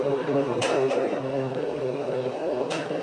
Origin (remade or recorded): remade